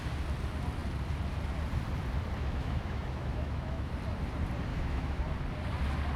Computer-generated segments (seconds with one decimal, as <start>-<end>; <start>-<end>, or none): 2.4-3.9; 4.7-5.2